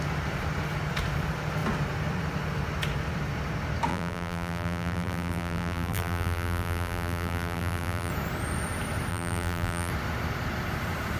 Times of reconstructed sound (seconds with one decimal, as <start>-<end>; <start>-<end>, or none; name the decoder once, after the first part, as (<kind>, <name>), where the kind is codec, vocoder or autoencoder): 3.9-8.1 (vocoder, BigVGAN v2); 9.1-9.9